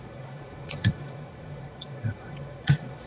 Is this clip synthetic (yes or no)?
yes